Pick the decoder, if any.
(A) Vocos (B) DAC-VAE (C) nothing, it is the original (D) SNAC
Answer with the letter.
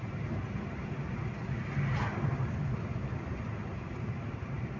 C